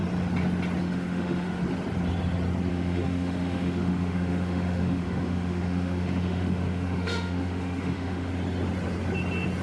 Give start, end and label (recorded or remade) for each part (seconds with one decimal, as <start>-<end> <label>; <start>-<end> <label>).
0.0-0.8 recorded; 0.8-1.6 remade; 1.6-2.7 recorded; 2.7-8.3 remade; 8.3-9.6 recorded